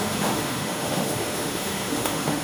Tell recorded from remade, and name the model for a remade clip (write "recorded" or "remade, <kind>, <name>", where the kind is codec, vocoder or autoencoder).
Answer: remade, autoencoder, DAC-VAE